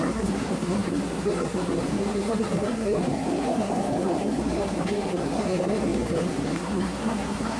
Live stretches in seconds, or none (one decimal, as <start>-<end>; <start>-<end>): none